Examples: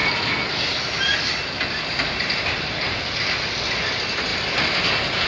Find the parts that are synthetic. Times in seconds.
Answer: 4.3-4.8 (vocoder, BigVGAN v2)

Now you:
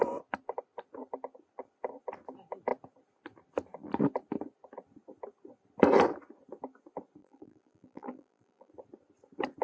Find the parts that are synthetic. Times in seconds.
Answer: 7.2-8.7 (vocoder, BigVGAN v2)

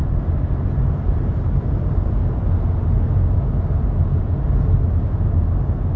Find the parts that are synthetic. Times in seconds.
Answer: 0.8-2.2 (vocoder, BigVGAN v2)

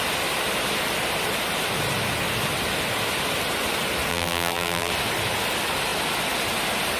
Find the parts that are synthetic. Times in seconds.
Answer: 4.1-4.9 (vocoder, BigVGAN v2)

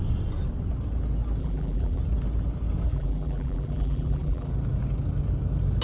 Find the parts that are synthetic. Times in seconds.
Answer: 1.4-2.0 (vocoder, BigVGAN v2); 2.9-4.5

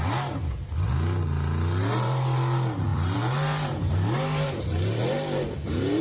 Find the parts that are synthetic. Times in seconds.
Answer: 0.0-0.4 (vocoder, BigVGAN v2); 1.9-6.0

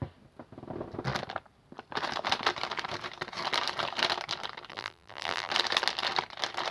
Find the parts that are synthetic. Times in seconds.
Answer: 4.7-5.5 (vocoder, BigVGAN v2)